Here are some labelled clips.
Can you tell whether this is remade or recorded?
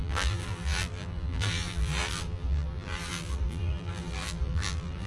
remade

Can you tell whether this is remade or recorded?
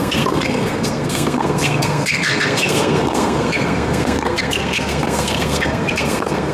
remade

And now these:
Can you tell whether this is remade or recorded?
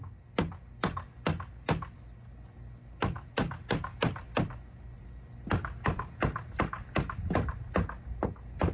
recorded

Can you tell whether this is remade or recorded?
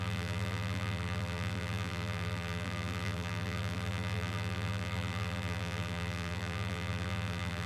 remade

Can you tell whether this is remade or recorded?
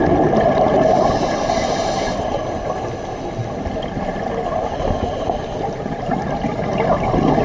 recorded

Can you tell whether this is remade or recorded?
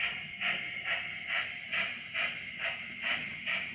remade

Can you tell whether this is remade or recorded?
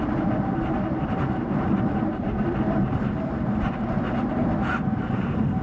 remade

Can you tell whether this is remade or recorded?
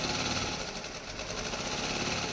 recorded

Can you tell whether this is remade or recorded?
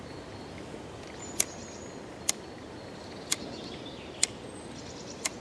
recorded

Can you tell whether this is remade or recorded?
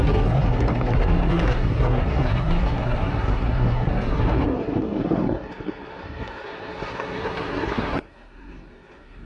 remade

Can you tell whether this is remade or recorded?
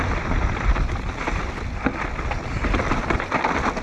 remade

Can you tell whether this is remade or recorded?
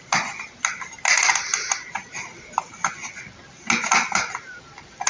recorded